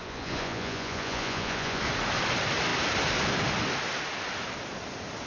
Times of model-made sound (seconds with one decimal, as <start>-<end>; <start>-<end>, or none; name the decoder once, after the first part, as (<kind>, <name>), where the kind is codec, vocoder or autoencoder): 0.0-1.8 (vocoder, Vocos)